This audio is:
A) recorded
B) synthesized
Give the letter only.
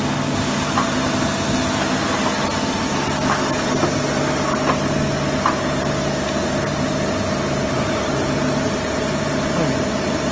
A